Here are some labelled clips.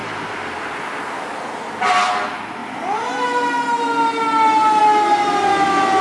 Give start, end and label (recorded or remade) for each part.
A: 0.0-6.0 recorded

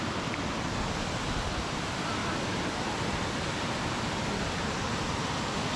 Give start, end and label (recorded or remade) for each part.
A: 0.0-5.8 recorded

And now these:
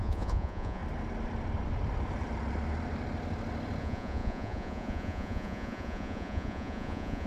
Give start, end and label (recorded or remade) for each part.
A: 0.0-0.8 remade; 0.8-3.8 recorded; 3.8-7.3 remade

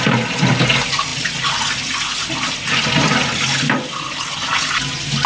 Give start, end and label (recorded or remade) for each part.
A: 0.0-5.3 recorded

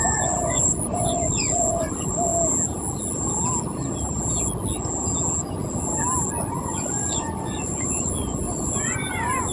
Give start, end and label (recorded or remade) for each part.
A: 0.0-2.3 remade; 2.3-6.5 recorded; 6.5-9.5 remade

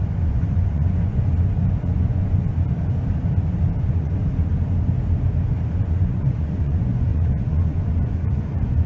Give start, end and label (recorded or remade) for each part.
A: 0.0-2.5 remade; 2.5-3.8 recorded; 3.8-4.5 remade; 4.5-5.7 recorded; 5.7-8.9 remade

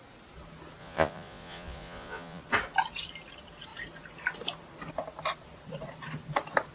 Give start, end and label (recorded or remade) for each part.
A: 0.0-0.8 recorded; 0.8-2.4 remade; 2.4-6.7 recorded